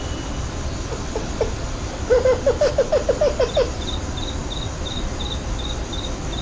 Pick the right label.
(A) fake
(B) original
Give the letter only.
B